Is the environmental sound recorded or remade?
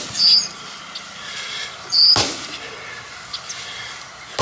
recorded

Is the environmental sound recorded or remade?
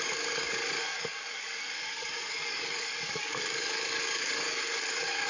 remade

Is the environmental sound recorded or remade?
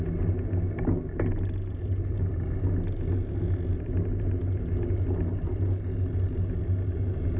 recorded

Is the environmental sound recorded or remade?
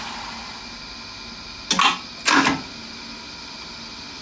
recorded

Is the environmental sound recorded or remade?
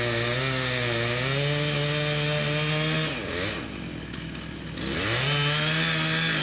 recorded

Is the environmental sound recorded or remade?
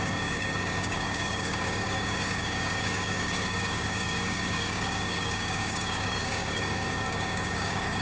remade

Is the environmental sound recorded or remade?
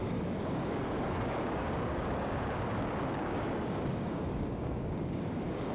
remade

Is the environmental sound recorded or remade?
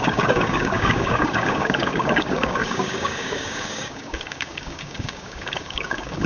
remade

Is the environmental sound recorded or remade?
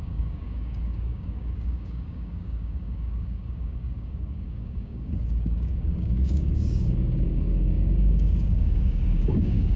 remade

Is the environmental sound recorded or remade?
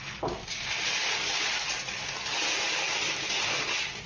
recorded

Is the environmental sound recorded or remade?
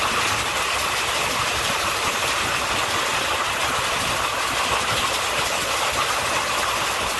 recorded